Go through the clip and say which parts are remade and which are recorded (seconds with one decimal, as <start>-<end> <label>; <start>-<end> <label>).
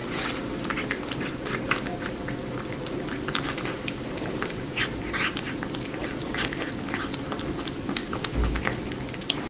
0.0-8.0 recorded; 8.0-8.6 remade; 8.6-9.5 recorded